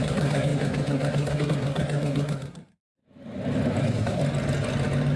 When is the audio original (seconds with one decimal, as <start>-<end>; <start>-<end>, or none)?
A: 3.0-3.8; 4.2-5.2